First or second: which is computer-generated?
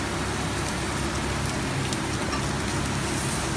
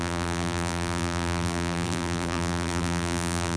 second